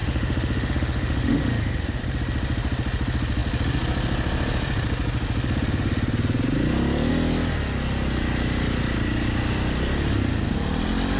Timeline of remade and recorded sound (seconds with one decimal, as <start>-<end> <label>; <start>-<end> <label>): 0.0-2.0 remade; 2.0-11.2 recorded